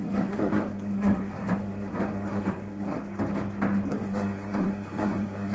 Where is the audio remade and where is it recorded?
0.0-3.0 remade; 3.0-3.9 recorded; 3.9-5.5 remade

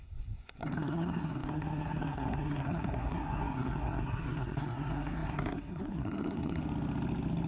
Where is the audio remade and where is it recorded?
0.0-6.6 remade; 6.6-7.5 recorded

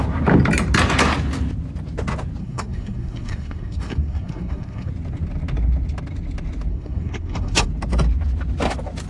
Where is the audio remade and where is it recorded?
0.0-2.4 recorded; 2.4-4.9 remade; 4.9-6.7 recorded; 6.7-7.7 remade; 7.7-9.1 recorded

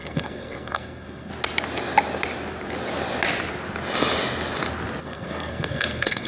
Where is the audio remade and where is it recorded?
0.0-1.3 remade; 1.3-5.0 recorded; 5.0-6.3 remade

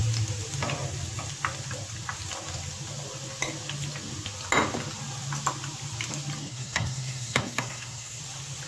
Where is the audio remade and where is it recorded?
0.0-6.4 recorded; 6.4-8.2 remade; 8.2-8.7 recorded

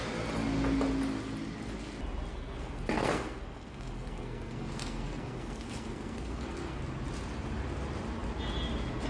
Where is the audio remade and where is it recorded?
0.0-2.3 recorded; 2.3-6.8 remade; 6.8-9.1 recorded